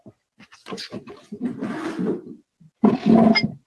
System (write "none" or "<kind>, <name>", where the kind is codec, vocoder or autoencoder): none